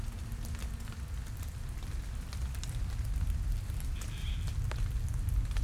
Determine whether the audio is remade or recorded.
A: recorded